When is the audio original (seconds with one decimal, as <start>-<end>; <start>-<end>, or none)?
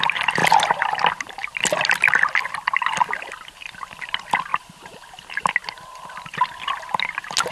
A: 0.0-7.5